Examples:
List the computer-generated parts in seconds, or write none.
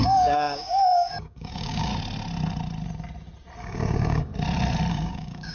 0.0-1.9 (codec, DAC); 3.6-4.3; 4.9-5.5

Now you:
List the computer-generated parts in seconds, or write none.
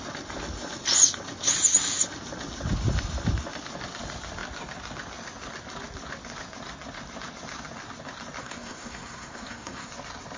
8.4-9.9 (codec, SNAC)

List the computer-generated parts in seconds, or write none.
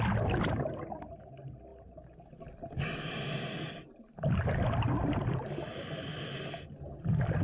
none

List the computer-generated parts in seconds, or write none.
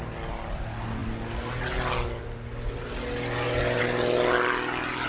none